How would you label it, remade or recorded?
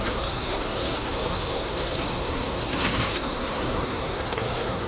remade